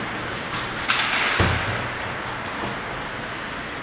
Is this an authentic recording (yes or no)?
yes